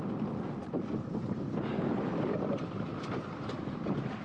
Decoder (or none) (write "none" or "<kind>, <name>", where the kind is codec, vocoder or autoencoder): none